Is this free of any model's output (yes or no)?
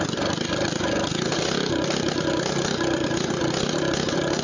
yes